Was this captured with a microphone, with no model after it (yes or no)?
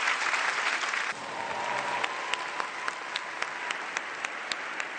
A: yes